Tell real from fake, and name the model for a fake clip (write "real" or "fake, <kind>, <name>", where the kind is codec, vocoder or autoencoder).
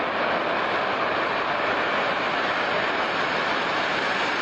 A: real